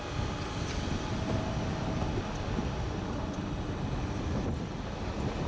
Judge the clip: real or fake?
real